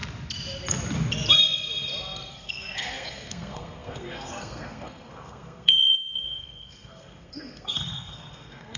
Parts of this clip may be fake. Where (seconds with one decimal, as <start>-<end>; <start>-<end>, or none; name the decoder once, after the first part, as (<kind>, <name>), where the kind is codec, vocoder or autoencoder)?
2.3-8.8 (codec, SNAC)